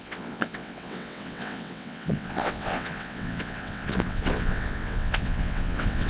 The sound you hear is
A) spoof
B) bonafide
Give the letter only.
A